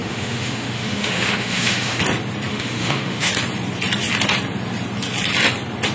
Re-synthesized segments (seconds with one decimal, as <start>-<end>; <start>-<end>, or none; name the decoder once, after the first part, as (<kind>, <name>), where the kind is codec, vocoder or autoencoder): 0.0-2.0 (autoencoder, DAC-VAE); 2.5-3.3